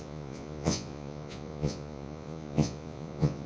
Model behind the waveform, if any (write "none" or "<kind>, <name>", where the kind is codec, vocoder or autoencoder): vocoder, Vocos